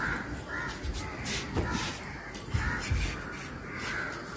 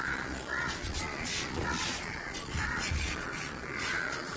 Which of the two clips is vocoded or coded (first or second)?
second